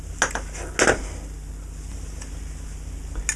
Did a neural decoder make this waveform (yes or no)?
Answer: no